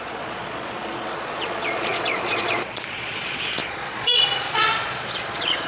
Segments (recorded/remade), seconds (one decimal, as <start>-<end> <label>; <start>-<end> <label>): 0.0-5.7 remade